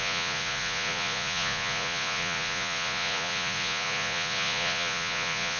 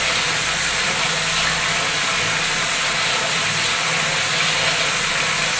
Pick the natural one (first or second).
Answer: second